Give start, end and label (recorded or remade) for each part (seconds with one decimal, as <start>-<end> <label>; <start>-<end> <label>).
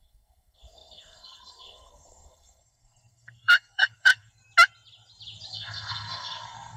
0.0-4.4 remade; 4.4-5.5 recorded; 5.5-6.8 remade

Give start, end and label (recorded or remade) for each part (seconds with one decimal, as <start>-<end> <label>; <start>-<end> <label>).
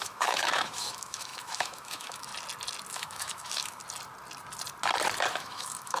0.0-2.3 remade; 2.3-2.9 recorded; 2.9-3.8 remade; 3.8-5.3 recorded; 5.3-6.0 remade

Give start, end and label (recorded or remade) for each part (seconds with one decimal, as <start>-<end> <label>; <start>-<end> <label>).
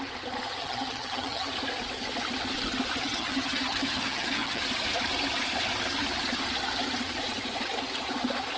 0.0-0.6 recorded; 0.6-1.5 remade; 1.5-3.0 recorded; 3.0-4.6 remade; 4.6-8.6 recorded